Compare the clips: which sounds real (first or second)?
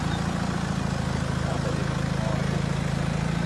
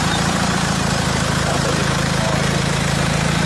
first